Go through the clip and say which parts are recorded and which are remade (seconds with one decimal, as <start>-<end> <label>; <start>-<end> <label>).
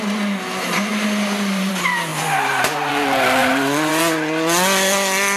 0.0-0.9 recorded; 0.9-1.7 remade; 1.7-3.4 recorded; 3.4-4.0 remade; 4.0-5.4 recorded